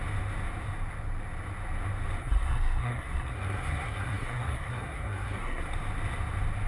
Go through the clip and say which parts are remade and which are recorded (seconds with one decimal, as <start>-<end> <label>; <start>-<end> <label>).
0.0-2.2 recorded; 2.2-5.7 remade; 5.7-6.7 recorded